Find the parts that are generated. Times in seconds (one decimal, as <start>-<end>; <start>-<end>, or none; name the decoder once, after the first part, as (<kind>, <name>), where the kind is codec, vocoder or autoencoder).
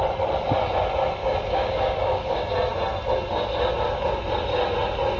1.2-2.5 (codec, DAC)